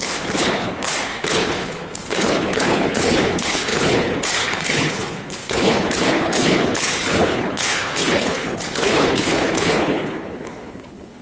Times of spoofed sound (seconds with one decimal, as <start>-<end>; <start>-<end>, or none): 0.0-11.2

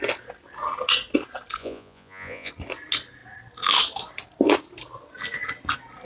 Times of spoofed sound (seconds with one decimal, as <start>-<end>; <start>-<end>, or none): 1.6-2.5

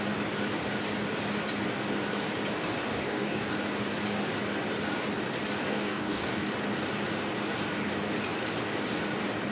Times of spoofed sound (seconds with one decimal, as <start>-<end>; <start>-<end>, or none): 2.9-3.5; 5.7-6.5

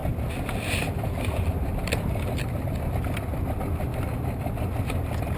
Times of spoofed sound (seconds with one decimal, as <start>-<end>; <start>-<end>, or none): none

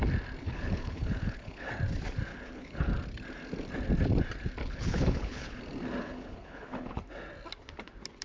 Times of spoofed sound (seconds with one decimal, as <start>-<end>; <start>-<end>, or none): 0.4-1.7; 2.3-2.9; 4.6-5.6; 6.0-7.0

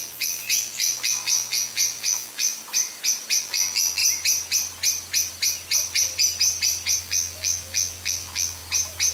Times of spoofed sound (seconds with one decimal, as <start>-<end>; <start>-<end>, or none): 0.0-2.5; 3.4-4.0; 7.0-8.6

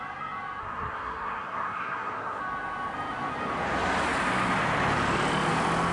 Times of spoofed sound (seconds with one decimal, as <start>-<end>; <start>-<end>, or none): 0.6-2.4